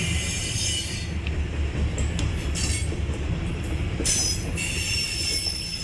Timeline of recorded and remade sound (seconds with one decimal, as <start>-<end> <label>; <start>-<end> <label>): 0.0-5.8 recorded